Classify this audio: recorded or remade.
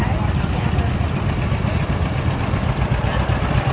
recorded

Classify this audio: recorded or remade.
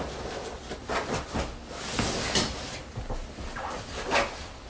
recorded